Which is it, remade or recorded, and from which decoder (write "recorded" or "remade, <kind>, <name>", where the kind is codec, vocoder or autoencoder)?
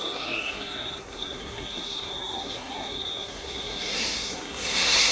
remade, codec, SNAC